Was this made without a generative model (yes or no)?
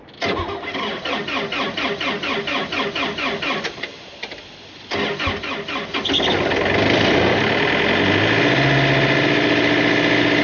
yes